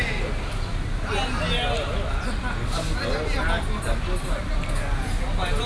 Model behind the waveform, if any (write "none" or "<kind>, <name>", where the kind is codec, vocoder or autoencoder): none